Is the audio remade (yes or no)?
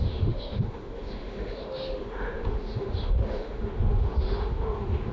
yes